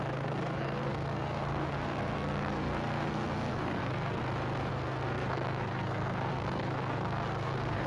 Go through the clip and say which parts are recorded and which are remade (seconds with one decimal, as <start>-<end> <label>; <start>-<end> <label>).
0.0-4.2 remade; 4.2-4.7 recorded; 4.7-7.9 remade